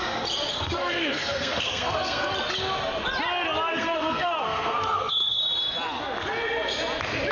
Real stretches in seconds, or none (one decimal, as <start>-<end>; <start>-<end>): 0.0-0.5; 2.3-3.7; 5.4-7.3